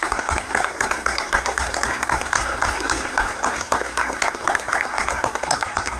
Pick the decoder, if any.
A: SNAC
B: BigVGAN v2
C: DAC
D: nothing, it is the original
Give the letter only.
A